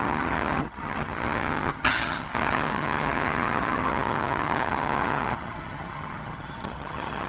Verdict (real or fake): fake